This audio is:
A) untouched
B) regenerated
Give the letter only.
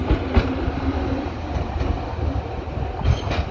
A